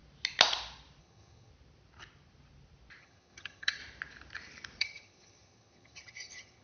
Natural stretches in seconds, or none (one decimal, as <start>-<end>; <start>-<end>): 0.0-1.0; 1.5-3.0; 3.8-4.8